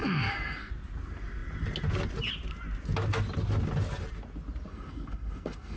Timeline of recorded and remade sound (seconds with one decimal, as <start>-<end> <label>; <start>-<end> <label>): 0.0-0.7 remade; 0.7-4.7 recorded; 4.7-5.8 remade